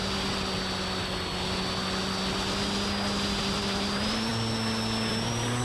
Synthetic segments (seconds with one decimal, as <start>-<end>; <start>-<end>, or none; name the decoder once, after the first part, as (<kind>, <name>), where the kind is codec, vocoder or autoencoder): 3.4-4.3 (vocoder, BigVGAN v2); 5.1-5.6